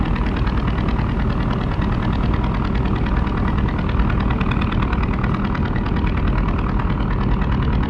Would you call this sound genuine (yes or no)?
yes